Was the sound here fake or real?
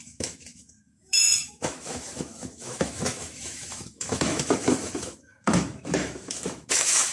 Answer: fake